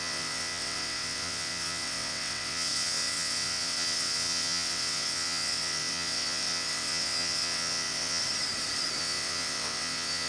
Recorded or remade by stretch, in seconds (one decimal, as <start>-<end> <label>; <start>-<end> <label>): 0.0-8.2 remade; 8.2-9.0 recorded; 9.0-10.3 remade